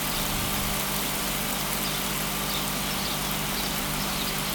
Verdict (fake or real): real